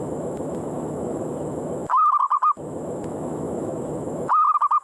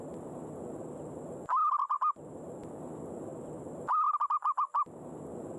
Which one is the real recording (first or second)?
second